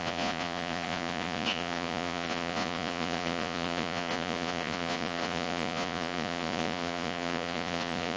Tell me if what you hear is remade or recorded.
remade